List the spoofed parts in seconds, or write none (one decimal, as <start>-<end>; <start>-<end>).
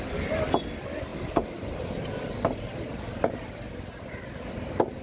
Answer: none